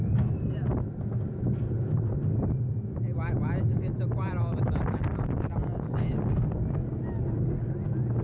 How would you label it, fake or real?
real